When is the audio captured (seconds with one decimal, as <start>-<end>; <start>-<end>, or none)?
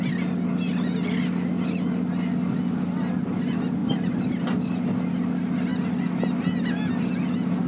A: 0.0-7.7